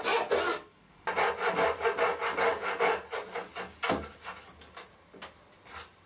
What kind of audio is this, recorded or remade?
recorded